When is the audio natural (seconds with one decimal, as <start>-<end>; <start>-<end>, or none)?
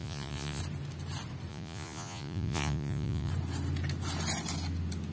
0.6-1.5; 3.3-5.1